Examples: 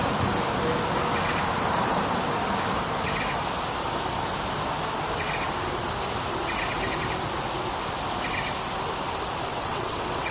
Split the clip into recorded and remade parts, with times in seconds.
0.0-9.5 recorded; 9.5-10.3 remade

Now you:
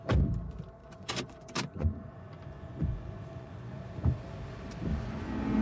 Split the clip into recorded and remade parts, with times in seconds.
0.0-0.8 recorded; 0.8-3.8 remade; 3.8-4.9 recorded; 4.9-5.6 remade

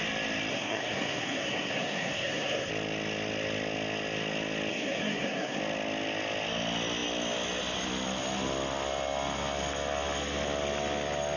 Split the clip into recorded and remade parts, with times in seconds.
0.0-0.5 recorded; 0.5-2.7 remade; 2.7-4.7 recorded; 4.7-5.6 remade; 5.6-11.4 recorded

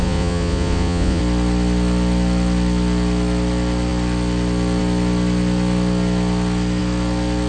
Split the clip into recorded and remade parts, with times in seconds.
0.0-1.2 remade; 1.2-7.5 recorded

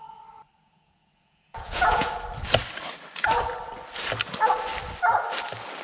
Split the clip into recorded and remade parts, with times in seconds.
0.0-0.6 recorded; 0.6-2.1 remade; 2.1-5.8 recorded